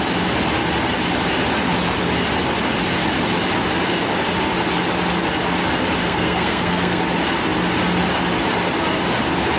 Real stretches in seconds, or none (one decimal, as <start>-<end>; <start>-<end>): 0.0-6.0; 7.0-9.6